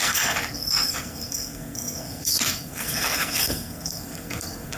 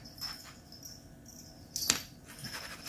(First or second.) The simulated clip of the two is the first